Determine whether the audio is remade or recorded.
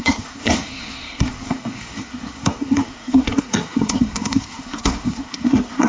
remade